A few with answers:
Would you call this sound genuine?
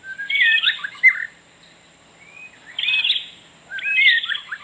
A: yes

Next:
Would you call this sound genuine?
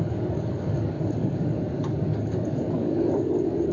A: no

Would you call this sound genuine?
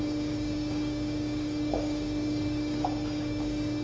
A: no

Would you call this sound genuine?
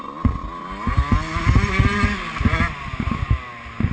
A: yes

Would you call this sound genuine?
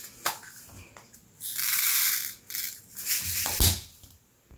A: yes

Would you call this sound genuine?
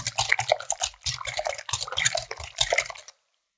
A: yes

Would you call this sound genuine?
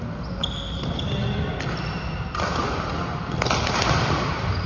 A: yes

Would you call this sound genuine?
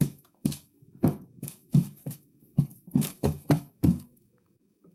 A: no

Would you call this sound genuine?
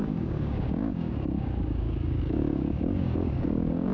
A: no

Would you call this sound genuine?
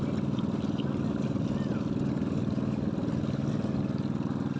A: yes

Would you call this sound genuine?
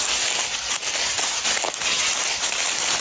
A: yes